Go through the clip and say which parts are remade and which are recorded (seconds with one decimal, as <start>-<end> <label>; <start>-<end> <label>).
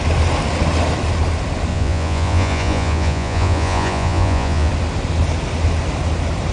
0.0-1.7 recorded; 1.7-4.7 remade; 4.7-6.5 recorded